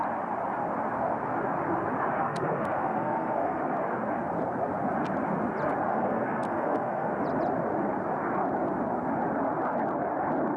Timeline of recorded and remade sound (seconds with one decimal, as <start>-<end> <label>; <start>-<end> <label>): 0.0-2.2 recorded; 2.2-3.6 remade; 3.6-5.9 recorded; 5.9-7.1 remade; 7.1-10.6 recorded